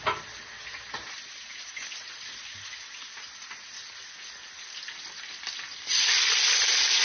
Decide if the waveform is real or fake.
real